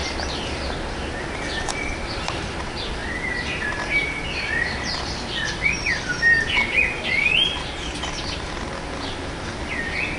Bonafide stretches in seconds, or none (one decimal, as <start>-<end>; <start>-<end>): 0.0-10.2